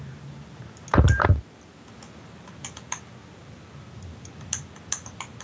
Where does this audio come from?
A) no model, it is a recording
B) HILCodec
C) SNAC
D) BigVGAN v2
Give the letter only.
A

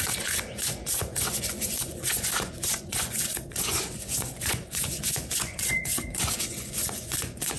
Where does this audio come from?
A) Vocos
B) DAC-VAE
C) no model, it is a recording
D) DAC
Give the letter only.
A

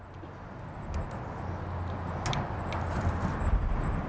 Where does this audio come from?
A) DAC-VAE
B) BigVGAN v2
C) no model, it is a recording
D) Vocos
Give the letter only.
C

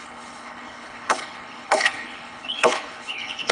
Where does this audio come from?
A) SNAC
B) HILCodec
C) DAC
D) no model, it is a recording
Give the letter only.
B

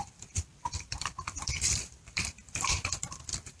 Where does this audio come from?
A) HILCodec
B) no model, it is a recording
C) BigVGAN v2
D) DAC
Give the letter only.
C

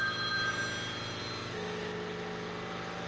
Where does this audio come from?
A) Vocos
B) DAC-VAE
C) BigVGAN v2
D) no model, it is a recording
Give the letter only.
D